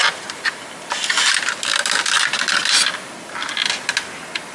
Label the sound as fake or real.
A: real